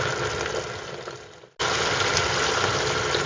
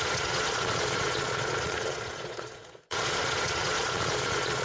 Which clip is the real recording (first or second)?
first